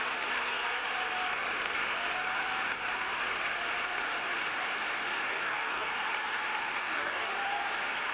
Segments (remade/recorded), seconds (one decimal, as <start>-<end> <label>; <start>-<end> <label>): 0.0-5.3 recorded; 5.3-5.9 remade; 5.9-6.8 recorded; 6.8-7.3 remade; 7.3-8.1 recorded